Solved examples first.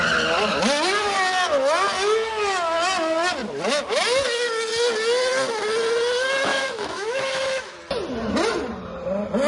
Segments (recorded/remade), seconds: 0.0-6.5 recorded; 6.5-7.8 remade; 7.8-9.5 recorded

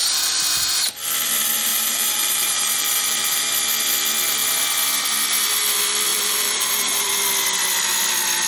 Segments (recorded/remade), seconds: 0.0-1.7 recorded; 1.7-3.5 remade; 3.5-6.1 recorded; 6.1-7.1 remade; 7.1-8.5 recorded

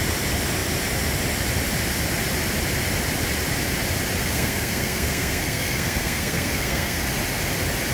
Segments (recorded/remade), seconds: 0.0-4.2 recorded; 4.2-7.0 remade; 7.0-7.9 recorded